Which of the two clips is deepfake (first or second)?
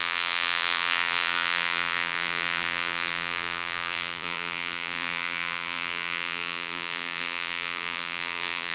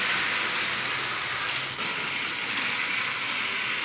first